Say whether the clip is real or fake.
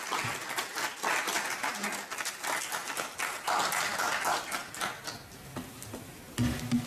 real